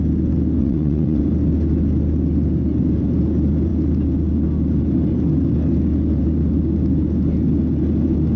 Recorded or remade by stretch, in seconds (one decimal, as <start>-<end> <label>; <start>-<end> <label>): 0.0-0.6 recorded; 0.6-1.2 remade; 1.2-8.4 recorded